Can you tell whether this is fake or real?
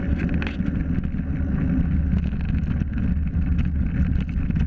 real